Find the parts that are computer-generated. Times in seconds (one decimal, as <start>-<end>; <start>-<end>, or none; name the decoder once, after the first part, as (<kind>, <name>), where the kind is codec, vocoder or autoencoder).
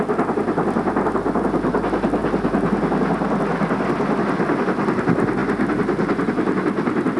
none